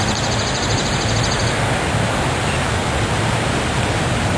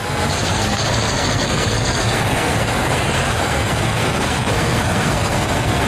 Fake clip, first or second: second